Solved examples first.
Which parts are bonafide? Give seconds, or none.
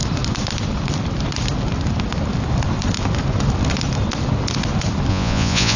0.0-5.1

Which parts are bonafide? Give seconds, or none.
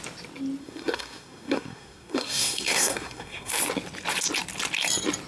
0.0-0.6; 3.5-5.3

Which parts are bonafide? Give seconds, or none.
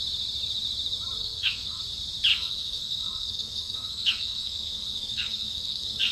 0.0-1.2; 1.8-2.3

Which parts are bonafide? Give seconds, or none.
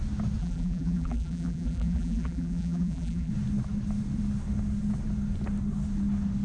0.0-0.4; 3.3-6.4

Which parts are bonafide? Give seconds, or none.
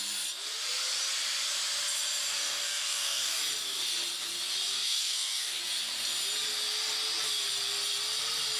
0.0-2.3; 3.4-4.7; 5.6-8.6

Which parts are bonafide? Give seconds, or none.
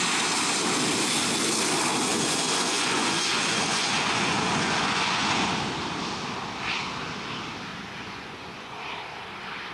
0.0-2.1; 5.5-7.7; 8.9-9.7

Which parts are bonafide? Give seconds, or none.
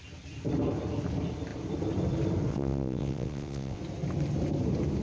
0.0-2.5; 3.8-5.0